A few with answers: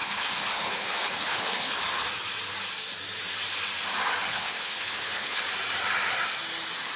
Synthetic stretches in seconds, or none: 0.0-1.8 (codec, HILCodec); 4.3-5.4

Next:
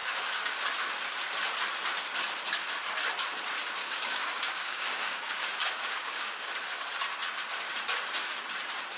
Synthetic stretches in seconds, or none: 3.8-6.5 (codec, DAC)

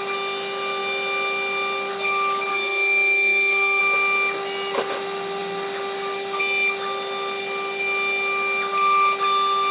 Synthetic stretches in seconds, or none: 2.5-3.8 (codec, SNAC)

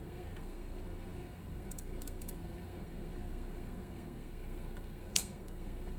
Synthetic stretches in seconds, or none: 0.0-6.0 (codec, SNAC)